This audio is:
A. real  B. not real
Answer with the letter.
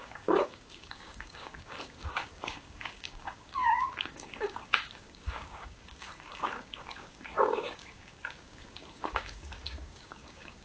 B